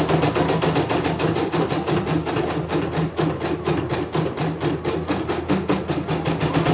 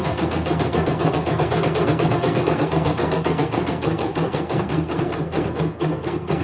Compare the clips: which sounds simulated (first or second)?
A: second